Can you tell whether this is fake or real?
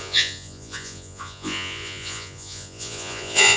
fake